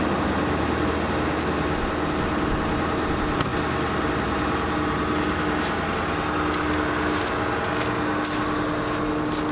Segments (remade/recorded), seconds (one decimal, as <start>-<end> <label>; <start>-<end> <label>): 0.0-9.5 recorded